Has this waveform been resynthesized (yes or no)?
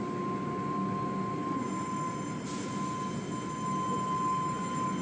no